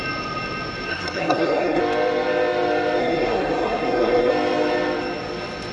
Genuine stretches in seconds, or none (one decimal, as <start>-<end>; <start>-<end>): 0.0-0.9; 1.8-3.0; 4.3-5.7